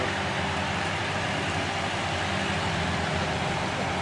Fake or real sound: real